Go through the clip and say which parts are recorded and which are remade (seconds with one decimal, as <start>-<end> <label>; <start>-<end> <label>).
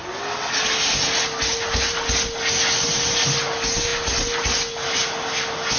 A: 0.0-5.8 recorded